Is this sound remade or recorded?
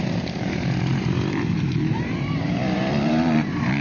remade